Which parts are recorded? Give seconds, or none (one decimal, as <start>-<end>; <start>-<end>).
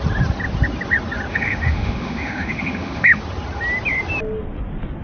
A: 0.0-1.3; 3.2-5.0